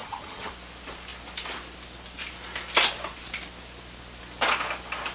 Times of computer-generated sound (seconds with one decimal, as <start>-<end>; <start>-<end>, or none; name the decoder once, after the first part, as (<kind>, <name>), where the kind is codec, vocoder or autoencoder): 0.0-0.5 (vocoder, HiFi-GAN)

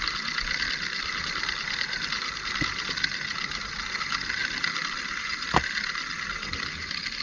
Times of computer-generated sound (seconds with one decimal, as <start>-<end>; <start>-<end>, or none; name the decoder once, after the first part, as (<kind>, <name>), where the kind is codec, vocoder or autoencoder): none